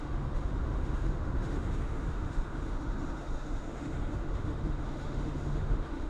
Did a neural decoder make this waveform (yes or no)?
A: yes